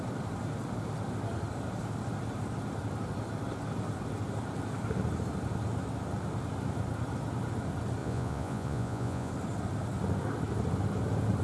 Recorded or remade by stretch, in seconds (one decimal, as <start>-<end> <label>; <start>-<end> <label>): 0.0-8.0 recorded; 8.0-9.3 remade; 9.3-11.4 recorded

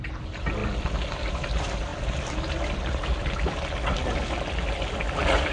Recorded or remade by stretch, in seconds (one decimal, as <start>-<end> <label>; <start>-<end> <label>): 0.0-5.5 recorded

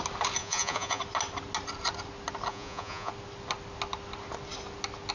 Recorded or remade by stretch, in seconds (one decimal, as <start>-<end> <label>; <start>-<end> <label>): 0.0-0.4 recorded; 0.4-1.0 remade; 1.0-2.5 recorded; 2.5-3.1 remade; 3.1-5.1 recorded

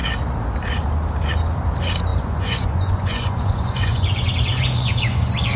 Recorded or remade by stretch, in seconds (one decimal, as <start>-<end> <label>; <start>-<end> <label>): 0.0-2.1 recorded; 2.1-5.6 remade

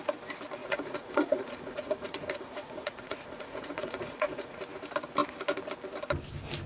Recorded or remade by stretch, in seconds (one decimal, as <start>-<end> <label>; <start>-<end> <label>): 0.0-0.6 recorded; 0.6-4.6 remade; 4.6-6.7 recorded

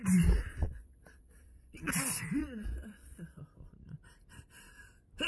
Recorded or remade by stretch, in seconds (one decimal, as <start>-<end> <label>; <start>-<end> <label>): 0.0-0.5 recorded; 0.5-1.9 remade; 1.9-2.4 recorded; 2.4-3.4 remade; 3.4-5.3 recorded

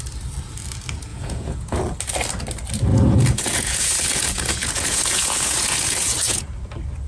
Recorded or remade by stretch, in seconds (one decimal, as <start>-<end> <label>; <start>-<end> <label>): 0.0-1.1 recorded; 1.1-1.8 remade; 1.8-2.9 recorded; 2.9-6.4 remade; 6.4-7.1 recorded